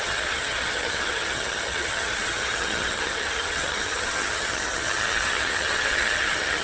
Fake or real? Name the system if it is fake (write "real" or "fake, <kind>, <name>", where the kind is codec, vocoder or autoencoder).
fake, vocoder, HiFi-GAN